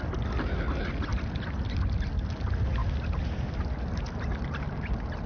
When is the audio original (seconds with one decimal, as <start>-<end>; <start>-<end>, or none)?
0.0-5.3